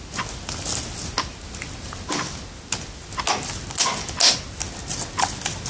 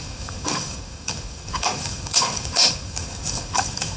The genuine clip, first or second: first